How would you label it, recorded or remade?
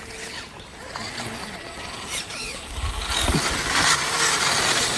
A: recorded